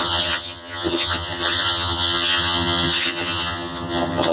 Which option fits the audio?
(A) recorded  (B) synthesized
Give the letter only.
B